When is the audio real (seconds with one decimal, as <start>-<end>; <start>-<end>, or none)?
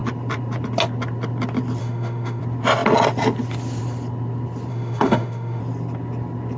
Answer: 0.0-1.8; 2.4-4.7; 5.6-6.6